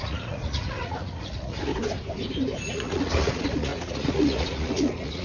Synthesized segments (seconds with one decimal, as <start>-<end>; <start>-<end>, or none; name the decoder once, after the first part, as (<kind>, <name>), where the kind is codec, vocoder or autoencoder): 0.0-1.7 (vocoder, Vocos); 2.7-5.2